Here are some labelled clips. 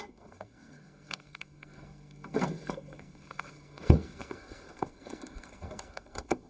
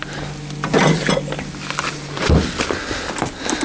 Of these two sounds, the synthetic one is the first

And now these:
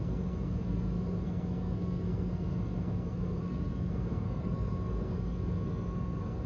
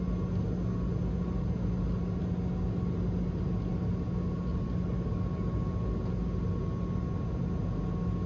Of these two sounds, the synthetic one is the first